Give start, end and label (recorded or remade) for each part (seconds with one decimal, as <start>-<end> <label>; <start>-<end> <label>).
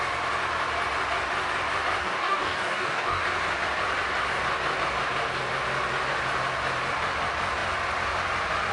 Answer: 0.0-2.0 recorded; 2.0-3.2 remade; 3.2-8.7 recorded